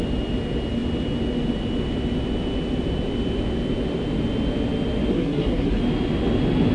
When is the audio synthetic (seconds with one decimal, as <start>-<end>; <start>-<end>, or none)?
5.1-5.8